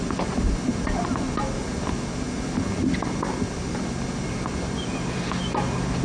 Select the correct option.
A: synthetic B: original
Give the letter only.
B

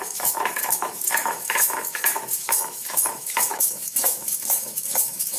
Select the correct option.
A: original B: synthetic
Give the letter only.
B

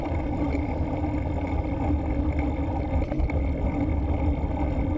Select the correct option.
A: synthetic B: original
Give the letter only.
B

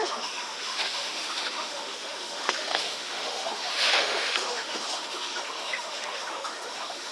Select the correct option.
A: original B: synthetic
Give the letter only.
B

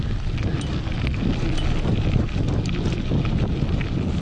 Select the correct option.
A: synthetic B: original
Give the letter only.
B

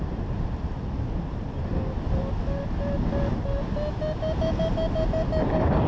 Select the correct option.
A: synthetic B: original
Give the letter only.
B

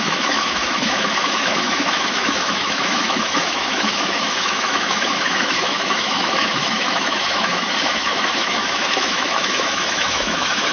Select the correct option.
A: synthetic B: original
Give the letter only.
A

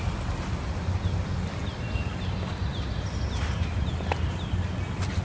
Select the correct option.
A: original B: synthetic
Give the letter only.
A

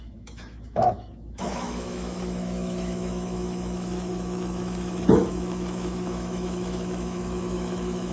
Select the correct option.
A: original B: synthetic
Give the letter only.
B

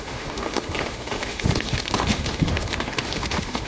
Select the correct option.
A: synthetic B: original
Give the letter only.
A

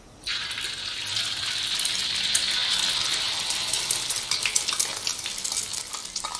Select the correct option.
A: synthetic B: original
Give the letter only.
B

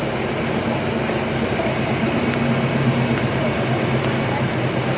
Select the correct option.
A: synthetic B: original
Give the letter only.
B